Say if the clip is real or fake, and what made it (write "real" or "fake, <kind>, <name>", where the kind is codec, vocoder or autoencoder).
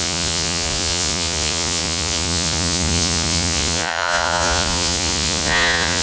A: fake, vocoder, Vocos